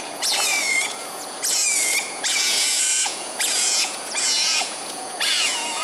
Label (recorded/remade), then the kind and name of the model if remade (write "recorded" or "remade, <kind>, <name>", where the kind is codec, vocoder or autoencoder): remade, vocoder, Vocos